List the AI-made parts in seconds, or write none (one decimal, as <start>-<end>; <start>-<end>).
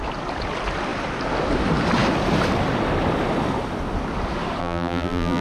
4.6-5.4